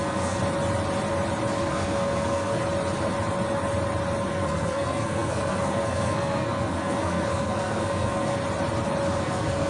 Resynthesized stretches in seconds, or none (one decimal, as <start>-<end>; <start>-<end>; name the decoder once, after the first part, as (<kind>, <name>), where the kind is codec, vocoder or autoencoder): 0.0-0.4 (codec, SNAC); 1.7-2.6; 4.3-8.4; 9.2-9.7